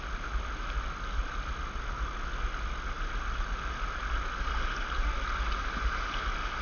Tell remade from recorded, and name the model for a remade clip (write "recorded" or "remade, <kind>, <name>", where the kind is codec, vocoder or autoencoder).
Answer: recorded